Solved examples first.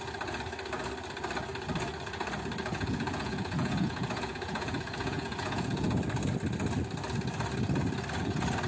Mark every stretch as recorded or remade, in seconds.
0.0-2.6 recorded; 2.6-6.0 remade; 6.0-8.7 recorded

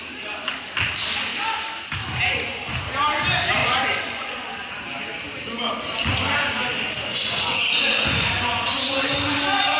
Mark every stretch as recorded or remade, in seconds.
0.0-3.6 recorded; 3.6-4.5 remade; 4.5-7.1 recorded; 7.1-8.3 remade; 8.3-9.8 recorded